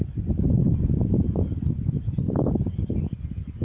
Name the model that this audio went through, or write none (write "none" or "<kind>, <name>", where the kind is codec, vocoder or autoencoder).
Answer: none